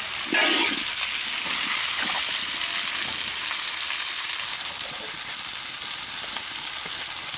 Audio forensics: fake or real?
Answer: real